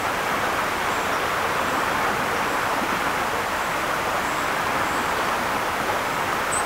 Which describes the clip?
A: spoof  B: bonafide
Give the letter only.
B